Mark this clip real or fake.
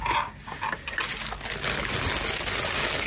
real